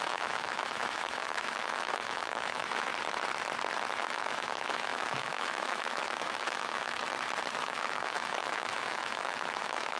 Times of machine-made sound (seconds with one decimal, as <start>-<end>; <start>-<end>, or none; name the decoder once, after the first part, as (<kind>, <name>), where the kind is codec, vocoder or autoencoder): 0.0-2.9 (autoencoder, DAC-VAE); 4.0-7.0; 7.6-10.0